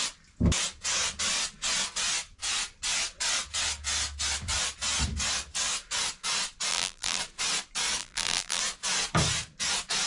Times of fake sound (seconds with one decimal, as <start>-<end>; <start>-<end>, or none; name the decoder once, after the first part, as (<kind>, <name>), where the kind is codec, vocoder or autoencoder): 6.7-7.2 (vocoder, BigVGAN v2); 8.0-8.6